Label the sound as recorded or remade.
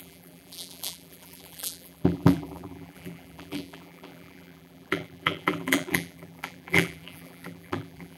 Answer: remade